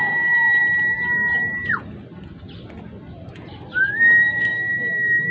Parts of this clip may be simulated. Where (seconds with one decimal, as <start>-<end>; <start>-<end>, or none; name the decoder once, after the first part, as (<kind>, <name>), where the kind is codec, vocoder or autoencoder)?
0.0-0.6 (codec, DAC); 3.8-5.3